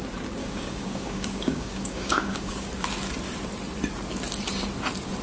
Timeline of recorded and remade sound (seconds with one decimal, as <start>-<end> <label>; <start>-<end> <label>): 0.0-0.4 recorded; 0.4-2.7 remade; 2.7-5.2 recorded